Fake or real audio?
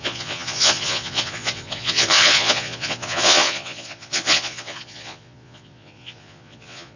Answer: fake